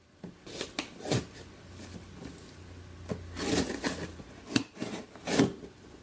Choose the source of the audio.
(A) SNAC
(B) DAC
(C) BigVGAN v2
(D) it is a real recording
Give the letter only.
D